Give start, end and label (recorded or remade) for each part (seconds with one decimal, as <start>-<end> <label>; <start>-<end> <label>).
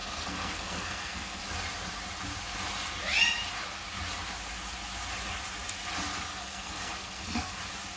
0.0-1.4 remade; 1.4-6.3 recorded; 6.3-7.6 remade; 7.6-8.0 recorded